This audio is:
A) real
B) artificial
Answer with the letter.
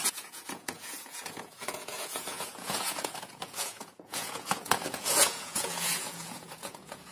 B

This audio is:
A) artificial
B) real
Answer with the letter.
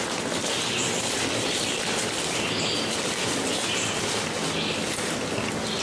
B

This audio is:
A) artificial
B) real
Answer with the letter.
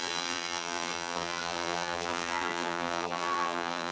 A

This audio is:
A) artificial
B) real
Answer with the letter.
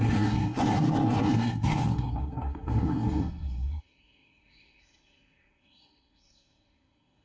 A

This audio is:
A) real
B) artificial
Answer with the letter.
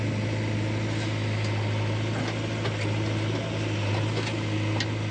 A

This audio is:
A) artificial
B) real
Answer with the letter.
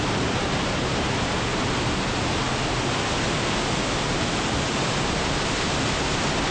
B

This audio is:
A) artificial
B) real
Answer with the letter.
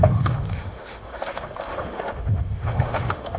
A